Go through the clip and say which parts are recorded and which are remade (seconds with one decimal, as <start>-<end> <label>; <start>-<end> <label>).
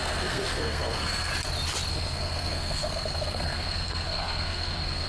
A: 0.0-1.3 remade; 1.3-1.9 recorded; 1.9-5.1 remade